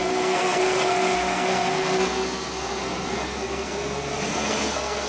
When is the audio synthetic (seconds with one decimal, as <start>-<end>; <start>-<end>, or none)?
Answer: 0.0-5.1